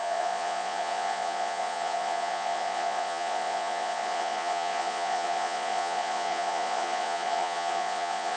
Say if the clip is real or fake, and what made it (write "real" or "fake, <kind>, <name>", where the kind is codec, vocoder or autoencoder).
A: fake, vocoder, Vocos